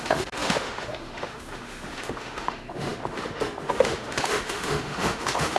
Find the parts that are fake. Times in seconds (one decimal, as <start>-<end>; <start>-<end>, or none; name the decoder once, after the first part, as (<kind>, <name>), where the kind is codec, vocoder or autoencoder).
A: 0.0-5.6 (autoencoder, DAC-VAE)